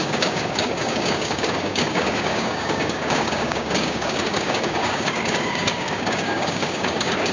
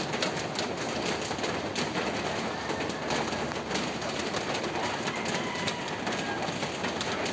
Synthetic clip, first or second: first